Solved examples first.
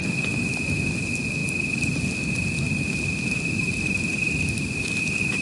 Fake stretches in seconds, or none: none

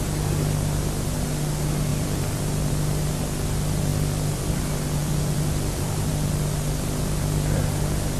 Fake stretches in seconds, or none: 1.9-2.4; 3.9-4.5; 5.0-6.1

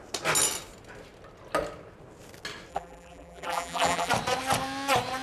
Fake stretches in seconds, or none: 2.7-4.1

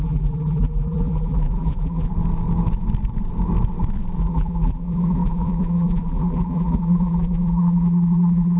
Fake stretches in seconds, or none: 0.0-2.1; 4.2-8.6

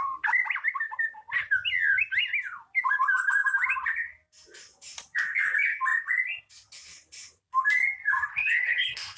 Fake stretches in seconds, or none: 8.3-9.2

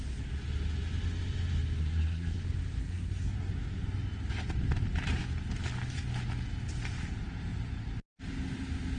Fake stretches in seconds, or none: 1.8-2.4; 2.8-3.5